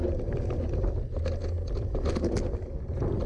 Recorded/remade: recorded